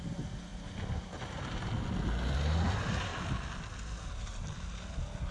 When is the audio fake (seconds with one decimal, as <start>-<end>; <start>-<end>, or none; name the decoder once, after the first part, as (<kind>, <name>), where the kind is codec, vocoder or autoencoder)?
0.5-1.7 (vocoder, BigVGAN v2)